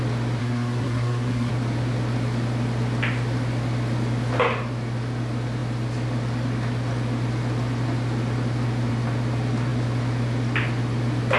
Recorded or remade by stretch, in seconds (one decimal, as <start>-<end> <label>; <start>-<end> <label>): 0.0-0.4 recorded; 0.4-1.5 remade; 1.5-11.4 recorded